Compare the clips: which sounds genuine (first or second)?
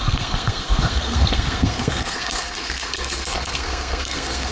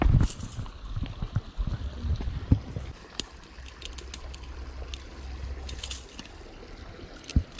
second